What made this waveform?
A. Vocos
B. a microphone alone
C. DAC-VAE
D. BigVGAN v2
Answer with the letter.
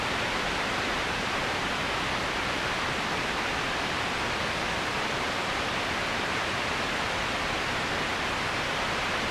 B